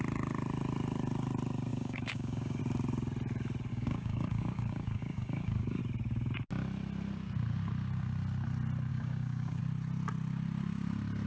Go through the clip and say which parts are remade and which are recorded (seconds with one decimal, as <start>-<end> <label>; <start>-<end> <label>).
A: 0.0-1.7 recorded; 1.7-2.6 remade; 2.6-3.7 recorded; 3.7-5.8 remade; 5.8-8.9 recorded; 8.9-9.6 remade; 9.6-11.3 recorded